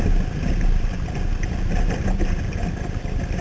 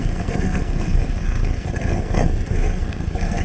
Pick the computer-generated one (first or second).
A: second